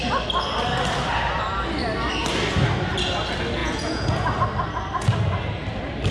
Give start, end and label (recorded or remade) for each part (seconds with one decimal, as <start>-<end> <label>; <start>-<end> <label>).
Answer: 0.0-3.6 recorded; 3.6-4.1 remade; 4.1-6.1 recorded